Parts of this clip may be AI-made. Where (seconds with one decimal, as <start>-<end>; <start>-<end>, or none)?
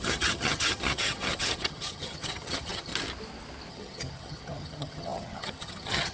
0.0-2.9; 3.7-6.1